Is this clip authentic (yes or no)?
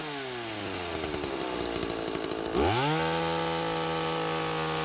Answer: yes